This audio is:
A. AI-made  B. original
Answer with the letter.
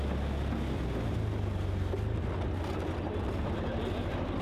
B